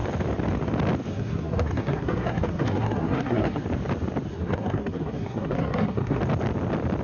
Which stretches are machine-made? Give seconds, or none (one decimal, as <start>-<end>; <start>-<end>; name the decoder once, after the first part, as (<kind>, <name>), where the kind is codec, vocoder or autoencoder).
1.1-3.6 (codec, SNAC); 4.3-6.2